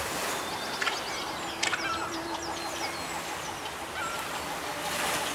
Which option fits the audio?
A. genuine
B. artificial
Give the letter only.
A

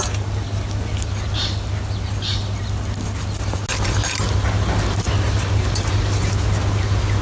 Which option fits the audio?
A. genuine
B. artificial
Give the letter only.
A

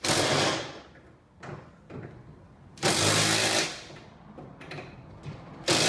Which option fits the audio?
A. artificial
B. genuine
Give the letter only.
B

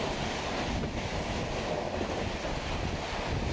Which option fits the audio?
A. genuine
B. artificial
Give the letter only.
A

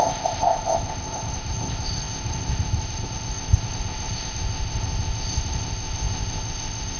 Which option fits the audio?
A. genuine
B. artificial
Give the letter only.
B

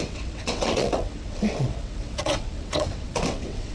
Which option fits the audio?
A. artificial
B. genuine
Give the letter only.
A